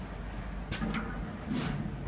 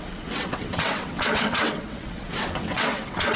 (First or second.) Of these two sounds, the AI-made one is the second